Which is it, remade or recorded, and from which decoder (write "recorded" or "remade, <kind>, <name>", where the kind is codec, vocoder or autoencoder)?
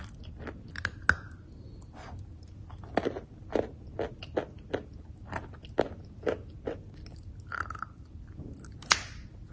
recorded